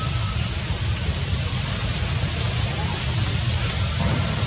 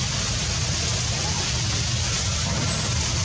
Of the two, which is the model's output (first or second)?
first